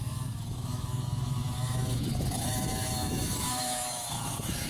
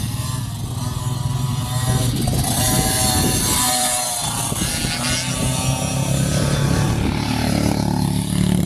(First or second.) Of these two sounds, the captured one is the second